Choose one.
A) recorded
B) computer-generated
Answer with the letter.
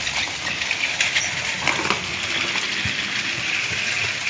A